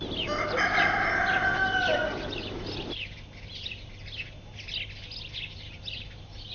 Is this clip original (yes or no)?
yes